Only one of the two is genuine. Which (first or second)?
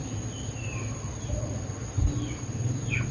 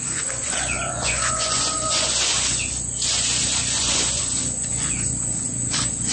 first